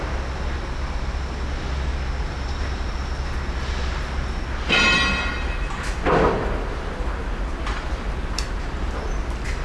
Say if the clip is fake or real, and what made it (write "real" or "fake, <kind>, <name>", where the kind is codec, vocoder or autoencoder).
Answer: real